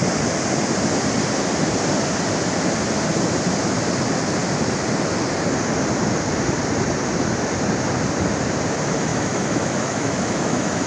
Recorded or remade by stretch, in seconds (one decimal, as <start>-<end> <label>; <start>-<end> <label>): 0.0-9.1 recorded; 9.1-10.9 remade